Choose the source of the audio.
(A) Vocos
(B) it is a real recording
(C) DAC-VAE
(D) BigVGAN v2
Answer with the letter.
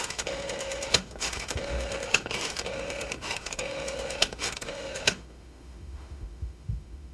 C